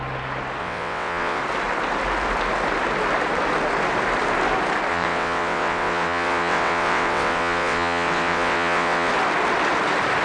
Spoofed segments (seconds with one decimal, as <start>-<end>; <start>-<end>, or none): 0.6-1.4; 4.9-9.1